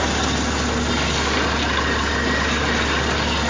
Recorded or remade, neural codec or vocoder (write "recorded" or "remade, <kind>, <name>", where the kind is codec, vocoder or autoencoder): recorded